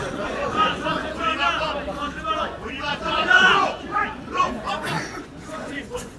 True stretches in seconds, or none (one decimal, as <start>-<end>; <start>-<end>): 1.0-2.4